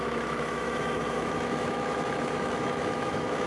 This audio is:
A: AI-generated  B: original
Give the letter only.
A